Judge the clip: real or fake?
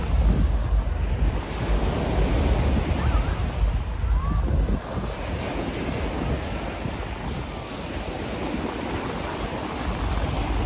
real